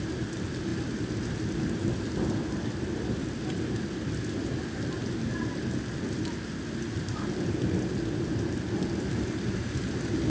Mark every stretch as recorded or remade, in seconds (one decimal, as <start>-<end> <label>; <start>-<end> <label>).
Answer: 0.0-10.3 recorded